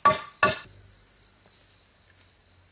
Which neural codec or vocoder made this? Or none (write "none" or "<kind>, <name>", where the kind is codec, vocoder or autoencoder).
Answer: none